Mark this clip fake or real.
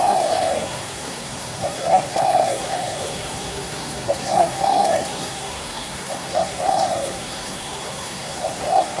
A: fake